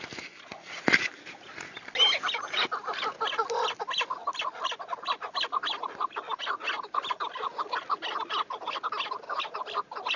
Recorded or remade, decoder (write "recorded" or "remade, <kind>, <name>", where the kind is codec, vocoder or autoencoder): recorded